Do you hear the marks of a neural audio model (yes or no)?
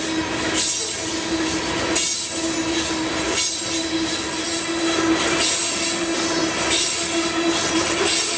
no